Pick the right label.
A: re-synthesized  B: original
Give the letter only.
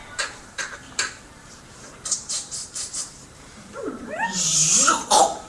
A